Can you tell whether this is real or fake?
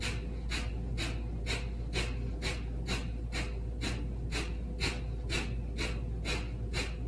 real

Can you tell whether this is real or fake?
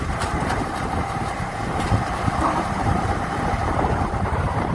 fake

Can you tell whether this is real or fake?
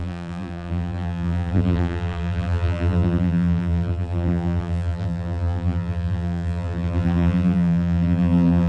fake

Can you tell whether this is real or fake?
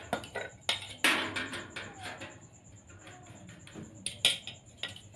real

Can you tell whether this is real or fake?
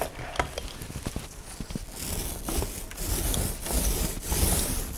real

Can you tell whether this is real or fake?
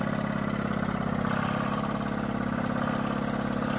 real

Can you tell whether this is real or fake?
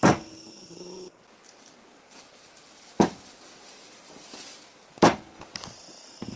real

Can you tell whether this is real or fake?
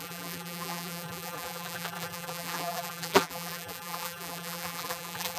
fake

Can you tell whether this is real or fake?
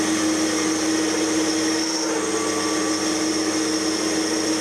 real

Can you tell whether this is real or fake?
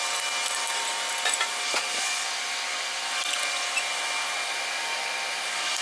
real